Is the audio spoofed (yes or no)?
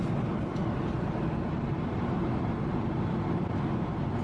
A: no